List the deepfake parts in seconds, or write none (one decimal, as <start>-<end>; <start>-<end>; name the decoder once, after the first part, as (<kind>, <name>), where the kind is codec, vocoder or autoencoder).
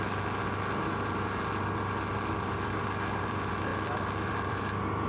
none